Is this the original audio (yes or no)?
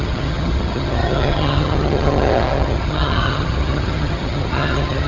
no